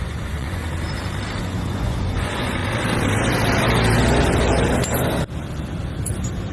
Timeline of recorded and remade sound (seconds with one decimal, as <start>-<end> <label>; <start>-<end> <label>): 0.0-0.6 remade; 0.6-1.4 recorded; 1.4-2.6 remade; 2.6-6.5 recorded